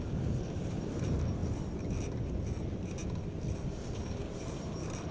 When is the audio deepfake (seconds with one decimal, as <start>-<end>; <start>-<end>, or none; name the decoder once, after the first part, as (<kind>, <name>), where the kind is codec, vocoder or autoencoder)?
none